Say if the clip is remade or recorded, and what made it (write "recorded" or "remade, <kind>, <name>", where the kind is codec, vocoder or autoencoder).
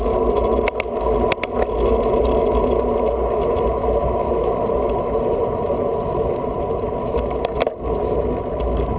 recorded